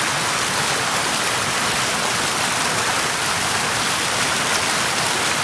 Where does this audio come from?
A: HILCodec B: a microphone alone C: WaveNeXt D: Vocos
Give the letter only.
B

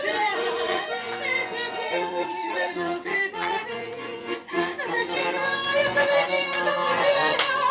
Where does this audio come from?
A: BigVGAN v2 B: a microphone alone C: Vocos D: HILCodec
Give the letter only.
C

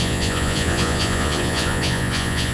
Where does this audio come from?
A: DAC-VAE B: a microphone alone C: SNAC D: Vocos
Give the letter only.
D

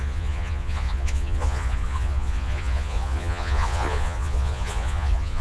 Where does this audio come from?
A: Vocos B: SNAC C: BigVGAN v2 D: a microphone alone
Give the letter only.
A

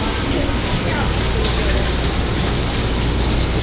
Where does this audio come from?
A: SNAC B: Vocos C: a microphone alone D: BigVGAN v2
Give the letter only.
C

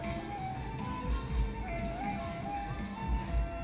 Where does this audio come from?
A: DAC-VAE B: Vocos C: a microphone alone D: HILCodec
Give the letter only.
C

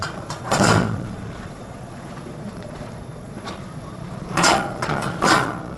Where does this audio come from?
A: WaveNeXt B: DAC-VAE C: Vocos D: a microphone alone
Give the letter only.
C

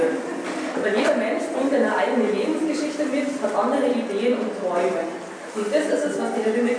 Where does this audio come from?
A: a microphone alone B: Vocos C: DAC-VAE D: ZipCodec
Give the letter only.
A